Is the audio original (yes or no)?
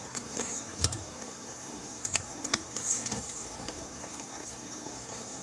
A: no